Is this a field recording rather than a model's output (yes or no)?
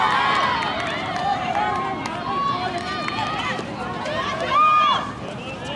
yes